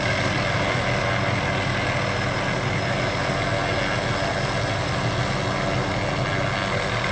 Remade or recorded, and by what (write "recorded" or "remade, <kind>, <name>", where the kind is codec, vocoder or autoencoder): recorded